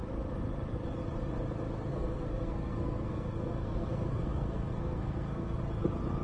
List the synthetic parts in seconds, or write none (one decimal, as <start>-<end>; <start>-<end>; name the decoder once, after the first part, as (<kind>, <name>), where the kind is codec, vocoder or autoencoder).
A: 1.9-5.6 (codec, SNAC)